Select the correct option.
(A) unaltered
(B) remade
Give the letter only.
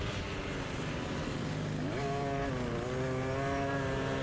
A